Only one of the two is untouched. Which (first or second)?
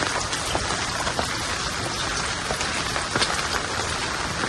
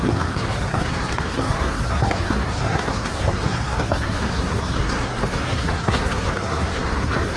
first